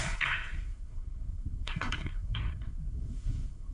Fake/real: fake